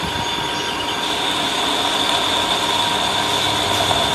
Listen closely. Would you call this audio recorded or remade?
recorded